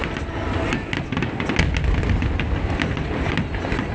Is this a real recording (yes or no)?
yes